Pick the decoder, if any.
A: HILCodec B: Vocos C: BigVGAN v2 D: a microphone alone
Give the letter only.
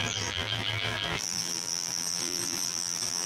C